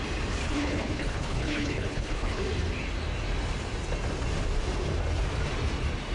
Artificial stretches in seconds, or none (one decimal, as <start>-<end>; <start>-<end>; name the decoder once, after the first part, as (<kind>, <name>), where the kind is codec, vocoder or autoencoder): 0.4-2.4 (codec, HILCodec)